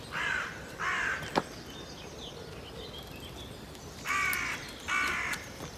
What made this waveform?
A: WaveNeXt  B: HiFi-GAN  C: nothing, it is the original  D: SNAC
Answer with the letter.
C